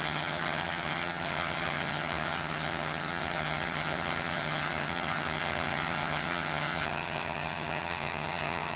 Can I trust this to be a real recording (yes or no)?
no